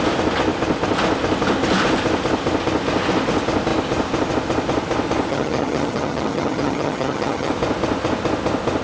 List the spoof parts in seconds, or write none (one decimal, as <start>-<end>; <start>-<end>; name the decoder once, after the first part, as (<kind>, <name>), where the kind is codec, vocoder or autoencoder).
5.3-7.5 (vocoder, HiFi-GAN)

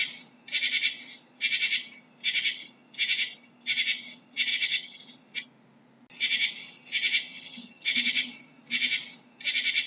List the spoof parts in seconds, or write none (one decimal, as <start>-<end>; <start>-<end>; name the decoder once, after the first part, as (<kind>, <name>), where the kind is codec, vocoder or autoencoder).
4.5-5.0 (vocoder, HiFi-GAN); 7.3-8.3

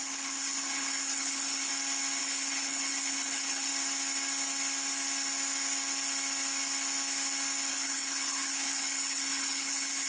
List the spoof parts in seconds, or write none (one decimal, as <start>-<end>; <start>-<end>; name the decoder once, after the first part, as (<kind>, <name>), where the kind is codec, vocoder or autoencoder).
0.0-1.7 (codec, HILCodec); 2.2-3.7; 7.7-10.1

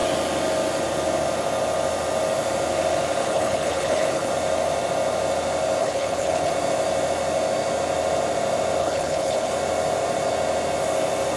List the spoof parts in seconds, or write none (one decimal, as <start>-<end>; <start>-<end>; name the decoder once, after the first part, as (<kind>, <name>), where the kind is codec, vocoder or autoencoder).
3.2-4.3 (codec, HILCodec); 5.8-6.5; 8.8-9.5

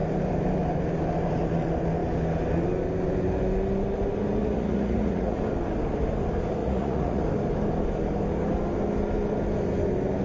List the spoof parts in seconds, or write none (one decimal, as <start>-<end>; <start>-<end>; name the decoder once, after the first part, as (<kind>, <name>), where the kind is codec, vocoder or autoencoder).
4.4-5.4 (vocoder, Vocos); 6.6-7.2

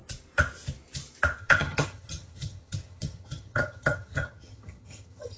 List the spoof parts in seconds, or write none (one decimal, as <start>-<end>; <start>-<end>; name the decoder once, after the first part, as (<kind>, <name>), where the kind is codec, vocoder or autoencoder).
1.4-5.4 (vocoder, HiFi-GAN)

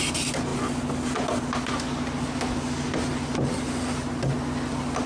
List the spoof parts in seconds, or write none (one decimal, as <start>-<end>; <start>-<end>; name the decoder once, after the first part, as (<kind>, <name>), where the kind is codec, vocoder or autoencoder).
none

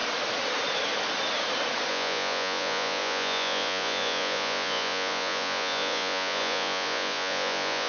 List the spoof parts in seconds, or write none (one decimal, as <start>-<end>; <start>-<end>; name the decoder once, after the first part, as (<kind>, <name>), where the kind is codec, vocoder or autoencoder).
1.9-7.9 (vocoder, Vocos)